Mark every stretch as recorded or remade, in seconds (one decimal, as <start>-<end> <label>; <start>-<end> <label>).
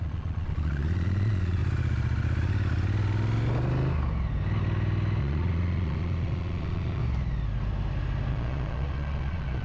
0.0-1.6 remade; 1.6-5.2 recorded; 5.2-7.0 remade; 7.0-8.3 recorded; 8.3-9.6 remade